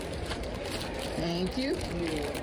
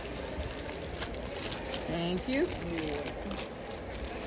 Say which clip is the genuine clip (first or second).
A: second